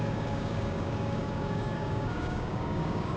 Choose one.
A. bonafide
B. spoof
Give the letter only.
B